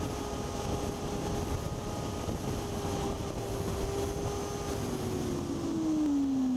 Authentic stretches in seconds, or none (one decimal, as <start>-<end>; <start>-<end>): 0.0-6.6